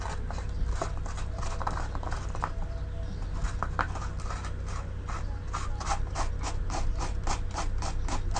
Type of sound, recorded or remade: recorded